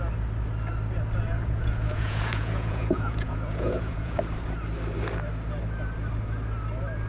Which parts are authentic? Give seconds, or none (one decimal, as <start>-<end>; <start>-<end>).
0.0-1.4; 4.2-7.1